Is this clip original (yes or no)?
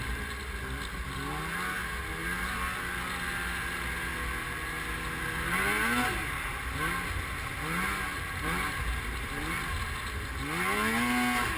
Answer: yes